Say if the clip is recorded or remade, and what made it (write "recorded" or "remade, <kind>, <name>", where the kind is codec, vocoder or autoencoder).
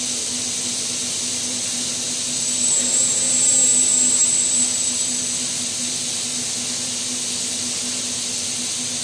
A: recorded